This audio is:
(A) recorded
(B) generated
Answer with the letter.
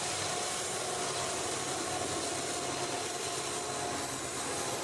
A